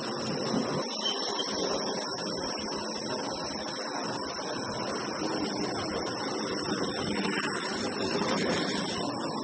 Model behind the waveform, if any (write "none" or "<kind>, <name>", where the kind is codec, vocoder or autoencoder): none